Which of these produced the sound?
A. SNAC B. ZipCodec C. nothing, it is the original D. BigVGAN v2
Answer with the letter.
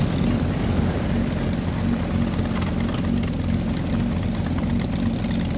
C